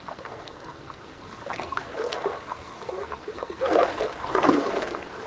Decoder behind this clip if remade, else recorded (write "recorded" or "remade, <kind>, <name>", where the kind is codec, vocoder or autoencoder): remade, codec, SNAC